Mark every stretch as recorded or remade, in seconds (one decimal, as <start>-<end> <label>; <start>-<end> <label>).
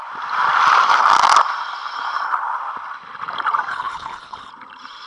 0.0-3.7 recorded; 3.7-4.5 remade; 4.5-5.1 recorded